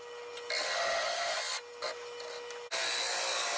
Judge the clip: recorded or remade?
recorded